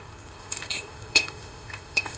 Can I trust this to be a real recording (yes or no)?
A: no